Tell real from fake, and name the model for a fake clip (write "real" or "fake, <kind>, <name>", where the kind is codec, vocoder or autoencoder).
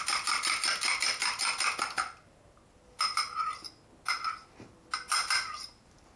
real